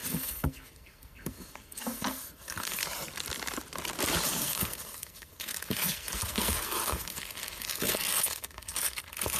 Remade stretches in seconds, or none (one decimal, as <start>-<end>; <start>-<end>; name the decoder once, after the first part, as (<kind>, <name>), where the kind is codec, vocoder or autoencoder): 0.0-2.8 (codec, SNAC); 4.4-9.4